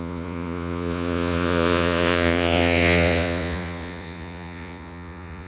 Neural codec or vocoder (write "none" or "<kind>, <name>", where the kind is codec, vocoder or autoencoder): vocoder, Vocos